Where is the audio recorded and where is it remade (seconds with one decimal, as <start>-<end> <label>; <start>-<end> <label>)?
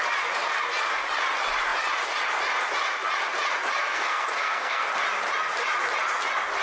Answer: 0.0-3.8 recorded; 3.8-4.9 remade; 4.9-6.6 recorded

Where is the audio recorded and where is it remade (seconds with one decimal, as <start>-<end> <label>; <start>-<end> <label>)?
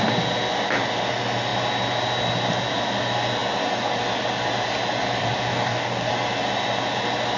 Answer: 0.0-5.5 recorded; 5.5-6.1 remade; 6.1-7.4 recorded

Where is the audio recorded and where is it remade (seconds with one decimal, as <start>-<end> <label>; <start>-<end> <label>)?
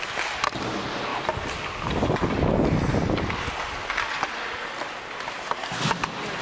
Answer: 0.0-6.4 recorded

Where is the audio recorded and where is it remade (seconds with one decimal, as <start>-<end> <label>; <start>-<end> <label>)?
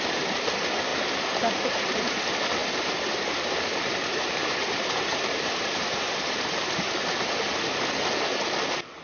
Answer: 0.0-0.9 recorded; 0.9-2.2 remade; 2.2-2.6 recorded; 2.6-7.8 remade; 7.8-9.0 recorded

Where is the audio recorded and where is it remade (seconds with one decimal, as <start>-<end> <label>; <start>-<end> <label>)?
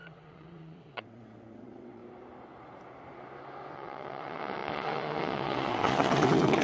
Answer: 0.0-2.0 remade; 2.0-3.7 recorded; 3.7-6.6 remade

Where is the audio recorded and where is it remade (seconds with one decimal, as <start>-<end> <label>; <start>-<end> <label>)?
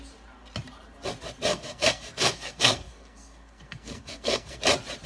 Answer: 0.0-1.5 recorded; 1.5-4.6 remade; 4.6-5.1 recorded